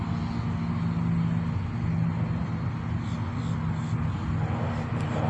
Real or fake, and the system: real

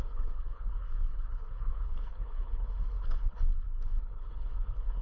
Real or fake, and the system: fake, codec, HILCodec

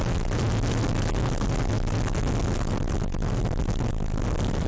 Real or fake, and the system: real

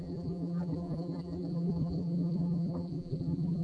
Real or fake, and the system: fake, vocoder, BigVGAN v2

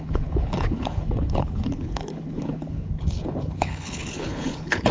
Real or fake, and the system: fake, codec, HILCodec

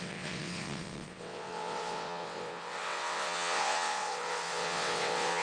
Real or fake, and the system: fake, vocoder, WaveNeXt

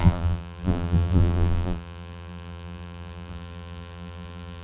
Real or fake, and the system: fake, vocoder, BigVGAN v2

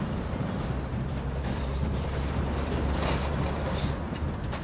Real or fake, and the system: fake, vocoder, BigVGAN v2